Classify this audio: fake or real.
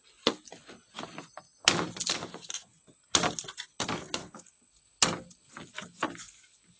real